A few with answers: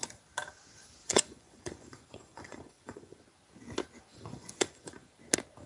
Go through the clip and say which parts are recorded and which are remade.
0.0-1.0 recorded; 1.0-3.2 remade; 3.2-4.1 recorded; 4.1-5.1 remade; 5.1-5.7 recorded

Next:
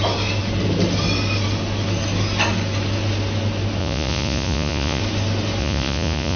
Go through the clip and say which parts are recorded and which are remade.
0.0-3.8 recorded; 3.8-5.0 remade; 5.0-5.6 recorded; 5.6-6.4 remade

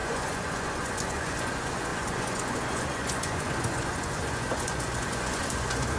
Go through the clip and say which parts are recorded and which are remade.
0.0-6.0 remade

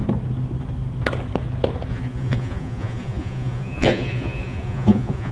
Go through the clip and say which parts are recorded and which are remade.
0.0-1.9 recorded; 1.9-5.3 remade

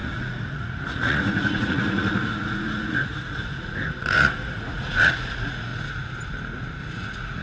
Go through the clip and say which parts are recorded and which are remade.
0.0-5.7 remade; 5.7-6.9 recorded; 6.9-7.4 remade

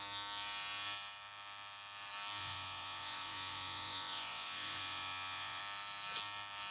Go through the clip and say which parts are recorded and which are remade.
0.0-2.4 recorded; 2.4-5.6 remade; 5.6-6.7 recorded

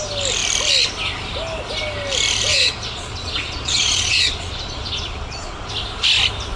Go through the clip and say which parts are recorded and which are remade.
0.0-2.5 recorded; 2.5-5.7 remade; 5.7-6.6 recorded